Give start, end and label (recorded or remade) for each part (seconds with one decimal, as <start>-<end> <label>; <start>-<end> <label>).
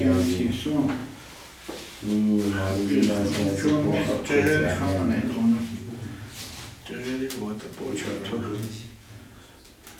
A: 0.0-8.5 recorded; 8.5-9.5 remade; 9.5-10.0 recorded